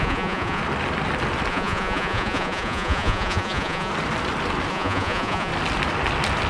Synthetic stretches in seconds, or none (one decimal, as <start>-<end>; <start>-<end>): 0.0-0.6; 1.5-3.9; 4.7-5.5

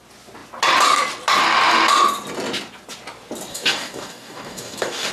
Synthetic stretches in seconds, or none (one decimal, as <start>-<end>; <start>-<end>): 3.5-5.1

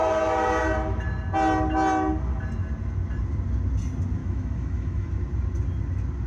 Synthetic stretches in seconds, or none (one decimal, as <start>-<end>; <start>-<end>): 4.2-5.1

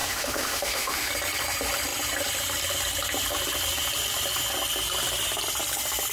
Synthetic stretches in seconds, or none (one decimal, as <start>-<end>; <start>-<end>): 0.0-1.1